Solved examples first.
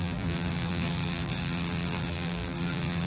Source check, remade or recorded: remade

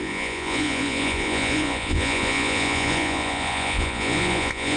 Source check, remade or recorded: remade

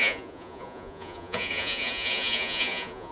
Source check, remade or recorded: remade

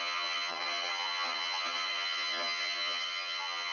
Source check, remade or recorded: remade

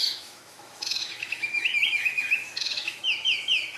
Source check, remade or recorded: remade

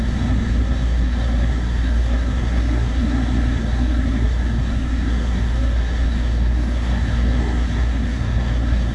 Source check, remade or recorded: remade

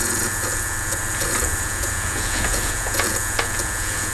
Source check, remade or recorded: remade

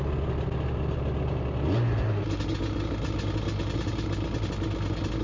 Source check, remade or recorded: recorded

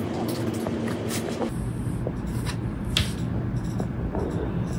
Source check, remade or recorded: recorded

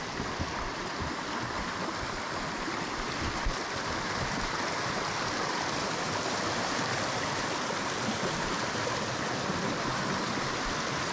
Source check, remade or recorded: recorded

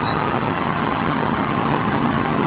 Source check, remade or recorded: remade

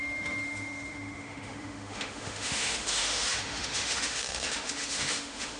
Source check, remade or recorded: remade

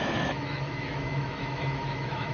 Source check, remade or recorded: remade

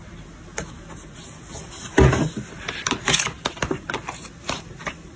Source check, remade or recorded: recorded